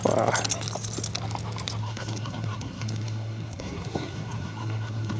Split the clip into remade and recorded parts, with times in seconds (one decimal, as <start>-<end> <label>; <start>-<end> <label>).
0.0-1.8 recorded; 1.8-5.2 remade